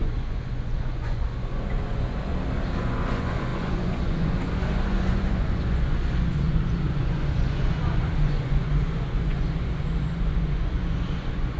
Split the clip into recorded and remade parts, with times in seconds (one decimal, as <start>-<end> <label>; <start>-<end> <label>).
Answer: 0.0-2.3 remade; 2.3-2.8 recorded; 2.8-11.6 remade